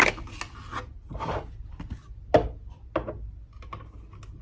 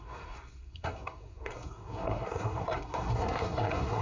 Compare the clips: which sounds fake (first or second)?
second